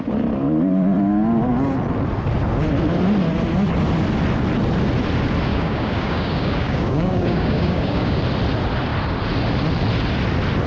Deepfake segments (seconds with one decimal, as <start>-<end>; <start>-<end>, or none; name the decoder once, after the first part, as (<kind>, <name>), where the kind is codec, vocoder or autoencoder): 5.5-8.2 (codec, DAC)